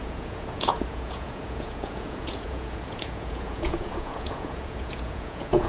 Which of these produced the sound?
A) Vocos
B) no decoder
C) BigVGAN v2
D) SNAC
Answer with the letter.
A